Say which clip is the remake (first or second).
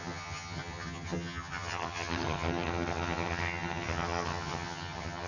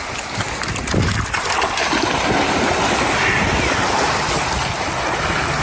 first